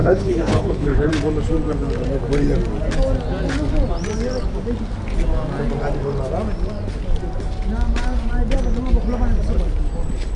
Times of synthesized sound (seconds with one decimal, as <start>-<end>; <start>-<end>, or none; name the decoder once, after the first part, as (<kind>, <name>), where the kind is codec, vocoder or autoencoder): 0.0-1.1 (codec, HILCodec)